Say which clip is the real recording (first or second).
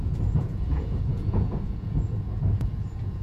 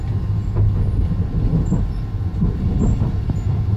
second